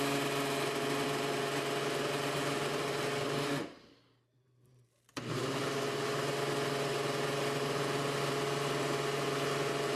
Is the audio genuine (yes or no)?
yes